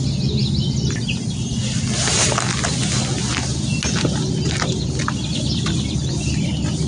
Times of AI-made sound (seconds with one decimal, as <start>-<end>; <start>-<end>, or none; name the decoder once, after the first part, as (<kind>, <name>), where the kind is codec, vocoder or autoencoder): none